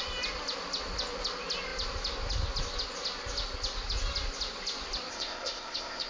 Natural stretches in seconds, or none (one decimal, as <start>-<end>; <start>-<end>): 0.0-5.1